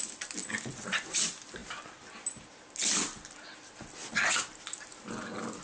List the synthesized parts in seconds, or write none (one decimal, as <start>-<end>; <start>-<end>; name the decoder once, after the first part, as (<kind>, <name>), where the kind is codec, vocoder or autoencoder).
none